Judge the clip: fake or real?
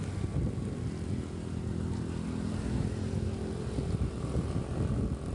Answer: real